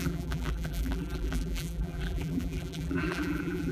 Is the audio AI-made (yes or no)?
yes